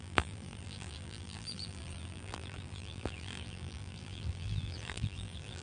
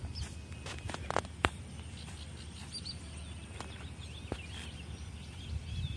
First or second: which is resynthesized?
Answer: first